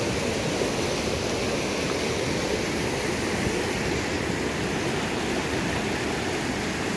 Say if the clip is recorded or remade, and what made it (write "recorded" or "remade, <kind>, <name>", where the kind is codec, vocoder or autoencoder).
recorded